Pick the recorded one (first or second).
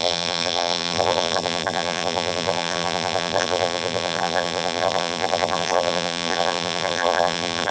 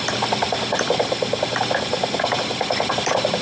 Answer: second